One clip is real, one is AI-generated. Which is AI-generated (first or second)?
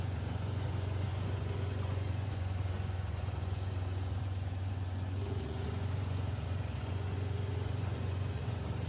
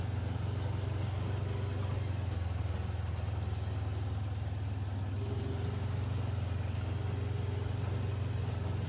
first